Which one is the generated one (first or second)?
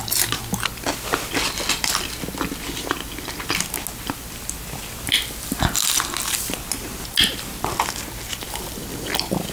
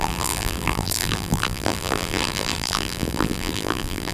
second